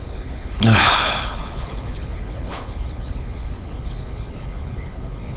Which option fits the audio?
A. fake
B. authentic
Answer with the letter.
A